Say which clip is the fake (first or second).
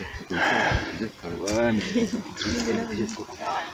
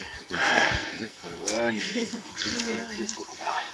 second